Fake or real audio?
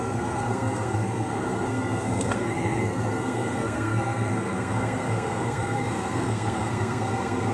fake